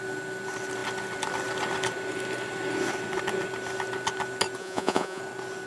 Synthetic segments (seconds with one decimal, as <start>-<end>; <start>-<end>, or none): 4.6-5.2

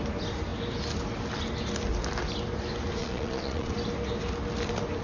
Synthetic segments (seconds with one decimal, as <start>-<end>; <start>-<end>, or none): 3.0-3.7

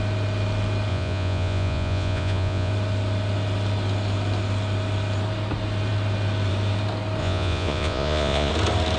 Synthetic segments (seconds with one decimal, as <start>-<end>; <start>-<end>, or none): 0.9-2.7; 7.2-8.5

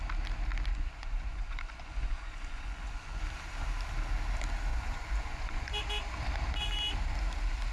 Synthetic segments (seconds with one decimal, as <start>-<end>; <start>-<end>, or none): 0.7-3.2; 4.7-5.7

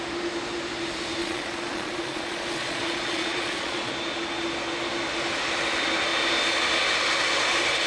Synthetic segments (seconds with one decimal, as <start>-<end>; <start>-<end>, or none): 1.2-3.9

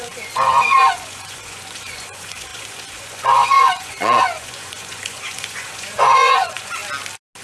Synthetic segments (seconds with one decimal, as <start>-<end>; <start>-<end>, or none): 0.0-6.8

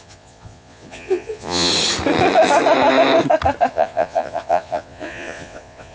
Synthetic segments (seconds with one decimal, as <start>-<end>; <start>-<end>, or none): 0.0-1.7; 3.7-5.9